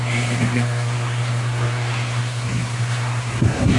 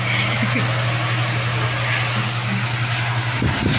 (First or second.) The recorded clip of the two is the second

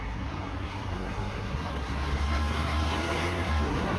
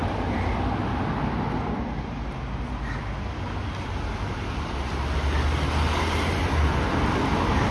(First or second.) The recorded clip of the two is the second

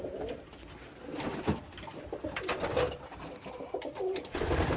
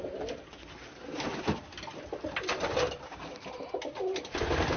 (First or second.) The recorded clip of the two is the second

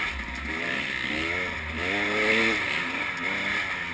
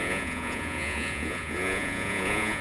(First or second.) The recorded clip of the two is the first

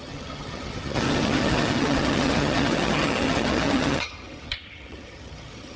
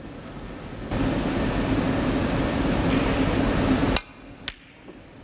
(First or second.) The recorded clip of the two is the second